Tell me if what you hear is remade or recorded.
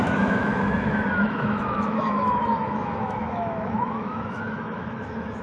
remade